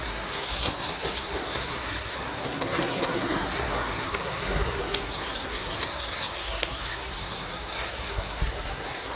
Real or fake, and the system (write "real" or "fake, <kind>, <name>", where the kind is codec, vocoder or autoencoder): fake, codec, SNAC